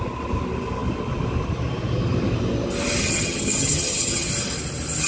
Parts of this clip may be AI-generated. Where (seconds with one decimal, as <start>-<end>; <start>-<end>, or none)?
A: 3.0-4.3